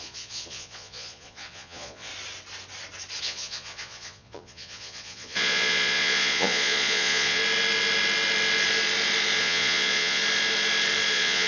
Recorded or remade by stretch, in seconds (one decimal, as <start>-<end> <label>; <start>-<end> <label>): 0.0-2.1 remade; 2.1-3.2 recorded; 3.2-7.4 remade; 7.4-9.4 recorded; 9.4-10.2 remade; 10.2-11.1 recorded; 11.1-11.5 remade